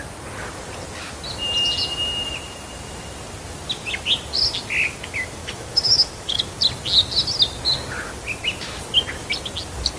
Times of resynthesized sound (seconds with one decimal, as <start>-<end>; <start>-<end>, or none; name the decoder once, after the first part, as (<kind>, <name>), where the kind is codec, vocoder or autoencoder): 5.4-6.4 (autoencoder, DAC-VAE)